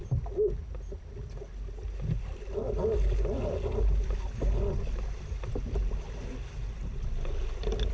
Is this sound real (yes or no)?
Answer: yes